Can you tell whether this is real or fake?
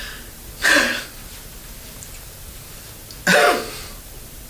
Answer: real